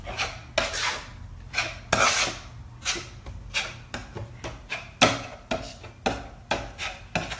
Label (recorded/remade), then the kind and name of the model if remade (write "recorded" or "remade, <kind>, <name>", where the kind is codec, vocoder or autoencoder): recorded